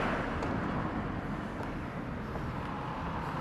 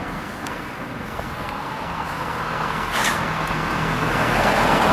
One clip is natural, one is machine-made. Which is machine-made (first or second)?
second